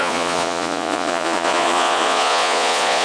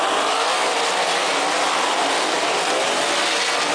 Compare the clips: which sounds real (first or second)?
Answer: second